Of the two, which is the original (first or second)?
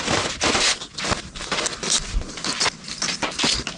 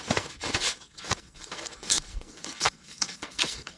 first